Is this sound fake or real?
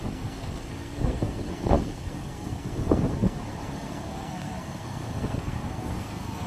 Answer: fake